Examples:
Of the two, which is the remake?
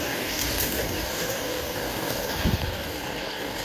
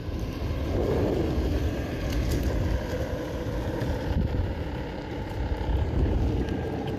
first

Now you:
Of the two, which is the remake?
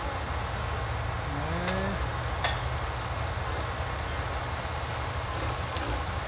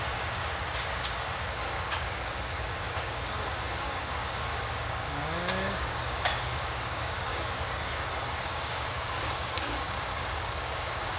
second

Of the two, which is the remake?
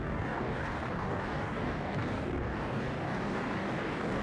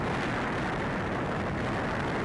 first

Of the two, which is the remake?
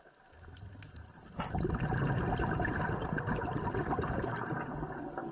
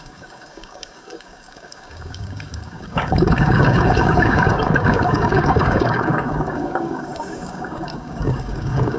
second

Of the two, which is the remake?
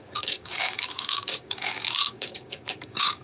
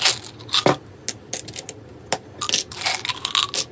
first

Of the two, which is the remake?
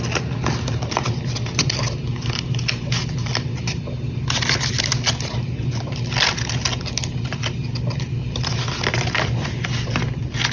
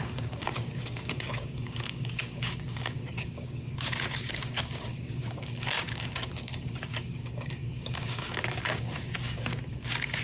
second